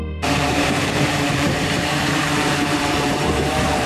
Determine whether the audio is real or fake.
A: fake